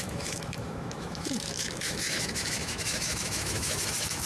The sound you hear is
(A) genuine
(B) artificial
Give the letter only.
B